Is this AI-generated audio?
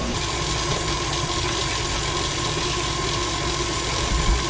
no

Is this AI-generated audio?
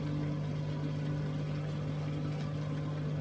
no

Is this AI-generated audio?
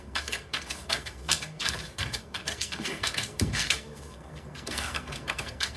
yes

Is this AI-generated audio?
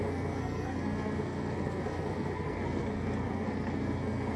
yes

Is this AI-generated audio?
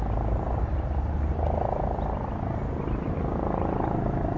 no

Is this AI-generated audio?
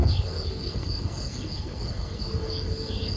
yes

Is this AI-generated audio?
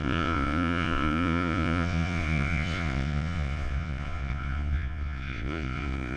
yes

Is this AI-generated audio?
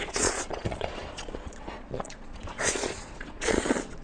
yes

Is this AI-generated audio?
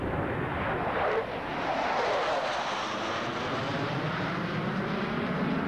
no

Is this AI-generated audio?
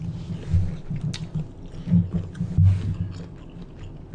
no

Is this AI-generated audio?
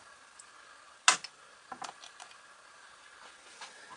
no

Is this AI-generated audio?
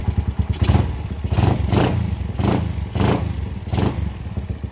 no